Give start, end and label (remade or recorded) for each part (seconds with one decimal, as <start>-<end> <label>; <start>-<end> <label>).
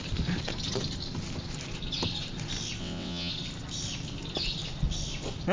0.0-2.8 recorded; 2.8-3.3 remade; 3.3-5.5 recorded